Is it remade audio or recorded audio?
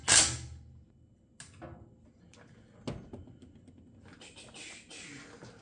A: recorded